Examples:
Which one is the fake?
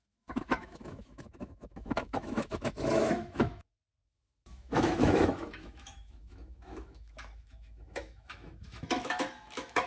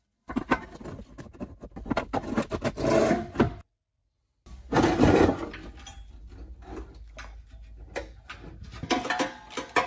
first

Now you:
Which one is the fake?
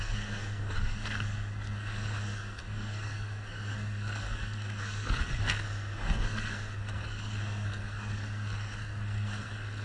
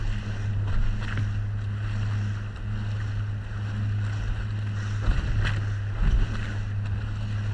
first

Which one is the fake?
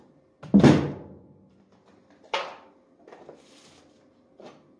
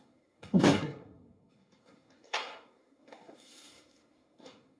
second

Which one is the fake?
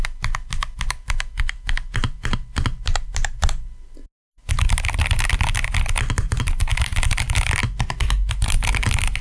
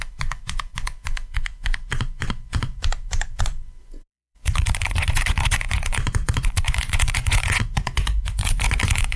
second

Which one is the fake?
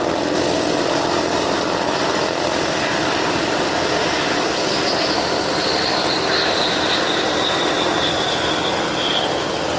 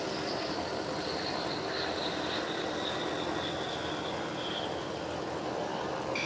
first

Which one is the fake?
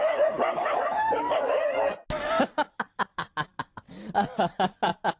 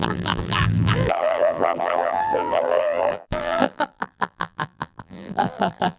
second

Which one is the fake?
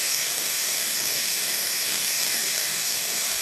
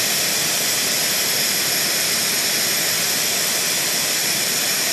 first